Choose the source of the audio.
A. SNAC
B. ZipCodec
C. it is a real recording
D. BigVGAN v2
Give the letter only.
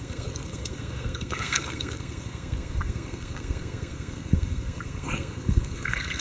A